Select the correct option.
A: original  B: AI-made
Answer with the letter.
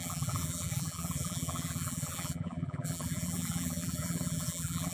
B